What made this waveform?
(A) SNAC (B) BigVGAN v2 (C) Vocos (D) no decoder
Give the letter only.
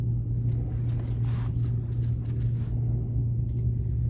D